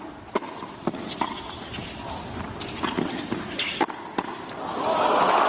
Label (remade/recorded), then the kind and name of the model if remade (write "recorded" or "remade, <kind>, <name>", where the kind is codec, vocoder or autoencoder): recorded